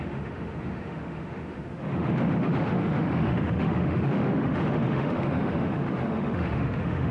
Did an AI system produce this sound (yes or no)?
yes